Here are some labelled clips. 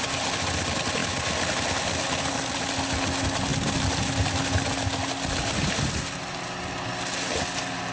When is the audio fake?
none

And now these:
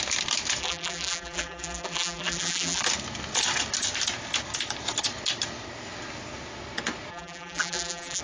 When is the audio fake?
0.6-2.8 (vocoder, BigVGAN v2); 7.1-8.2

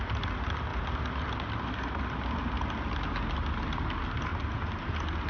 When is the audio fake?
none

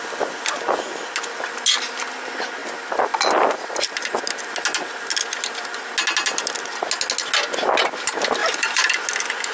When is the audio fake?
8.4-8.9 (vocoder, BigVGAN v2)